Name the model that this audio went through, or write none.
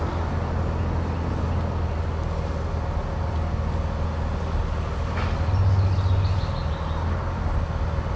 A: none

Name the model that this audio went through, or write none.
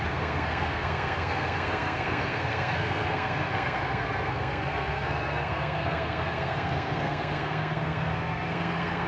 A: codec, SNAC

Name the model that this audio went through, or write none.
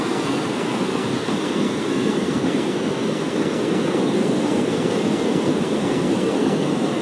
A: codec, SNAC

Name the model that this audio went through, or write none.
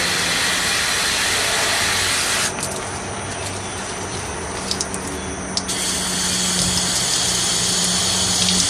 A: none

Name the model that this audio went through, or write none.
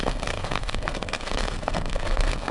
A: codec, SNAC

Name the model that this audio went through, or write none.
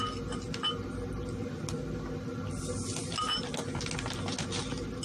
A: none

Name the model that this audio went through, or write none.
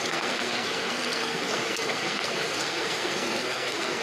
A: codec, SNAC